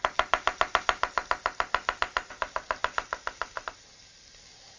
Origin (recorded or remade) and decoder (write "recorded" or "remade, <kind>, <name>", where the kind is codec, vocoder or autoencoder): recorded